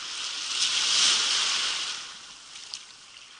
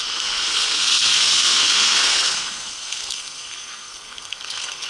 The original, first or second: first